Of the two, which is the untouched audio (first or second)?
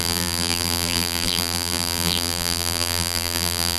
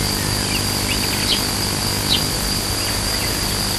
second